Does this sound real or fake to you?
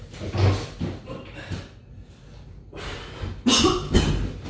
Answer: real